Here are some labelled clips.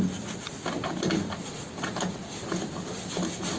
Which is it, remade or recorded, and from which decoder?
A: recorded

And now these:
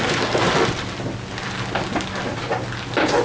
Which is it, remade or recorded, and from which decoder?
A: recorded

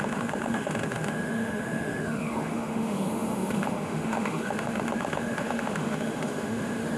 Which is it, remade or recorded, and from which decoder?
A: remade, autoencoder, DAC-VAE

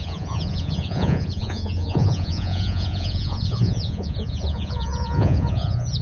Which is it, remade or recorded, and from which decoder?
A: remade, vocoder, Vocos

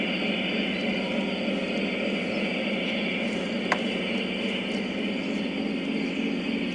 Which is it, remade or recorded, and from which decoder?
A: recorded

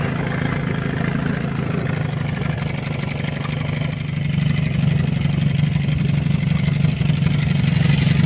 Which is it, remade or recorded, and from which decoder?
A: recorded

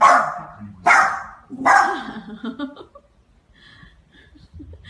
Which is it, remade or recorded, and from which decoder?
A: recorded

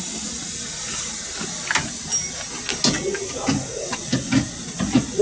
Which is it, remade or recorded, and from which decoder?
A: recorded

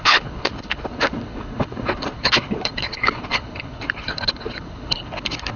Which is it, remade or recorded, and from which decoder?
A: remade, codec, HILCodec